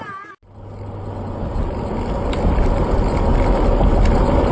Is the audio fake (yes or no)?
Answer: no